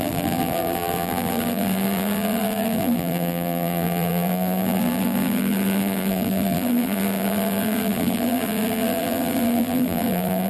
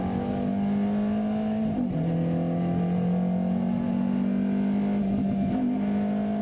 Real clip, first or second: second